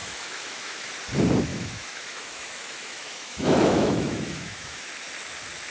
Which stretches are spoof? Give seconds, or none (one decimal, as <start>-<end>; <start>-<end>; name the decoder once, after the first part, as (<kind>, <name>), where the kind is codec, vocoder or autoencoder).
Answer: 0.0-0.9 (autoencoder, DAC-VAE); 1.5-4.9